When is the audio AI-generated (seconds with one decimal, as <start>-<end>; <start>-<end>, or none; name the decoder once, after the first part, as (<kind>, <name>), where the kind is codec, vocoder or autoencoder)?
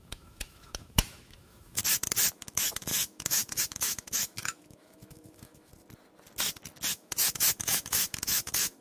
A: 0.0-1.8 (autoencoder, DAC-VAE); 2.3-5.7; 6.9-8.8